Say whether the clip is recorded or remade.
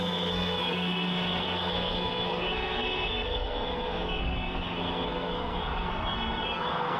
remade